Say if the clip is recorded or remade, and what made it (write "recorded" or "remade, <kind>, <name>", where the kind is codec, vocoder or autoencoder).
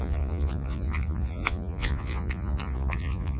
remade, vocoder, Vocos